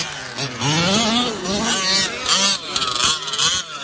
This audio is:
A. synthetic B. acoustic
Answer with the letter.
B